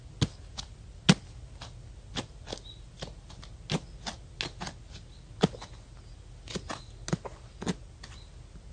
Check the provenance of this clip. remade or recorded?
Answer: recorded